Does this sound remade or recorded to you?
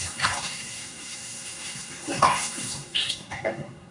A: remade